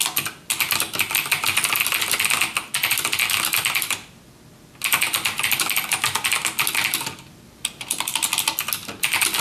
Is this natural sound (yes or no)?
yes